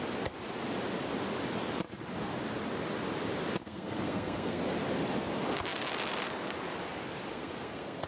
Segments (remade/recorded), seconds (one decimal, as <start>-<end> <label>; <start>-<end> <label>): 0.0-3.6 recorded; 3.6-4.6 remade; 4.6-7.3 recorded; 7.3-8.1 remade